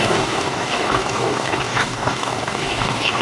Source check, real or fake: fake